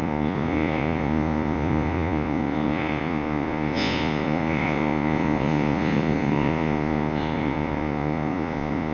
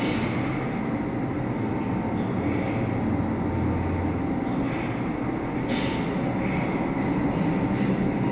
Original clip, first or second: second